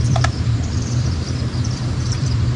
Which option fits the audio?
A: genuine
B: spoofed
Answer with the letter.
B